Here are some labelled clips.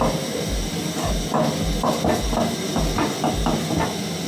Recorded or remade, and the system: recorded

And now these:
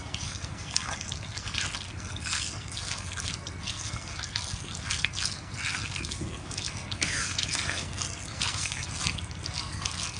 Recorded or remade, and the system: remade, codec, SNAC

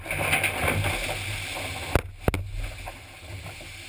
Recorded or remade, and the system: recorded